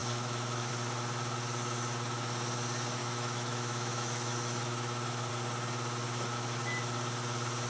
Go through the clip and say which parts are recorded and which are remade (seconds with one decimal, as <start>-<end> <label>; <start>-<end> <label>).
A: 0.0-0.7 remade; 0.7-3.0 recorded; 3.0-5.3 remade; 5.3-7.7 recorded